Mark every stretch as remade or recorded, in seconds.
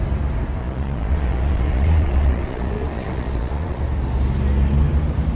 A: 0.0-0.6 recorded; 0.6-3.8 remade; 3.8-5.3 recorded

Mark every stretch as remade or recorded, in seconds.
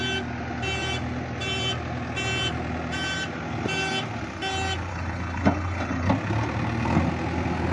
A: 0.0-4.9 recorded; 4.9-6.1 remade; 6.1-7.7 recorded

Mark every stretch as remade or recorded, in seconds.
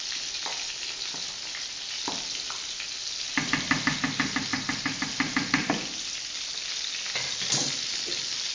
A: 0.0-8.5 recorded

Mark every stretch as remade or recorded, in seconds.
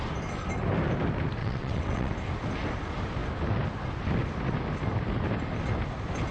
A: 0.0-1.4 recorded; 1.4-2.1 remade; 2.1-6.3 recorded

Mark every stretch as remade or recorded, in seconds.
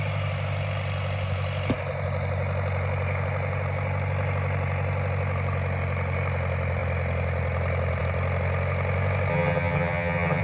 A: 0.0-9.3 recorded; 9.3-10.4 remade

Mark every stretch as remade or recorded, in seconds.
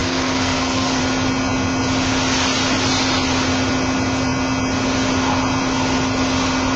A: 0.0-1.0 remade; 1.0-6.8 recorded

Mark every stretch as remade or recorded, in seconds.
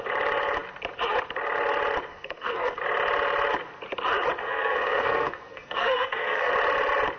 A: 0.0-2.1 recorded; 2.1-2.8 remade; 2.8-4.4 recorded; 4.4-6.5 remade; 6.5-7.2 recorded